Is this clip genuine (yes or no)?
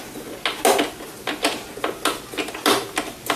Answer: yes